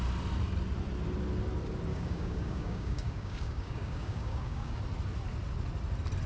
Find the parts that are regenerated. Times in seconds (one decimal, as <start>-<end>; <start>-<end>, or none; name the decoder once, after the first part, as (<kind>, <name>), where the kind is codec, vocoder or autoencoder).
1.9-4.8 (codec, DAC)